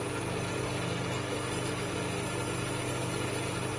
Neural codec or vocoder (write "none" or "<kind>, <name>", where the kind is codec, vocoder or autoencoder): none